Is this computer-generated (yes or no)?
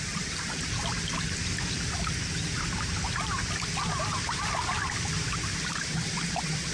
no